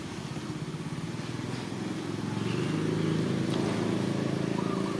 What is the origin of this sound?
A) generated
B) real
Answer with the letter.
B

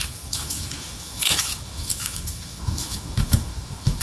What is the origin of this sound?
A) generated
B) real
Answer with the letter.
A